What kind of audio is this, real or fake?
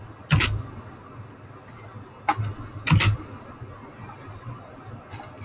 real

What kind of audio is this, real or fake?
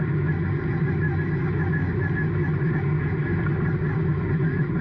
real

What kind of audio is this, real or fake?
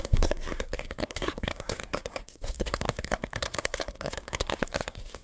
fake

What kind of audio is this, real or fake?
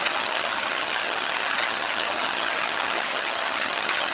fake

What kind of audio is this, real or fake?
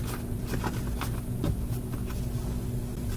real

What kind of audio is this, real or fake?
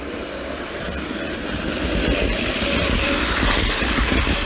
real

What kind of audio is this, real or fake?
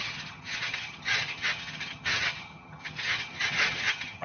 fake